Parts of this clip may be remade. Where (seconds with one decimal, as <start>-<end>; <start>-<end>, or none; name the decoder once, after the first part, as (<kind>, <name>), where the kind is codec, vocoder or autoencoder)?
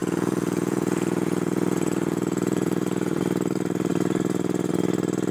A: 0.0-3.2 (vocoder, Vocos)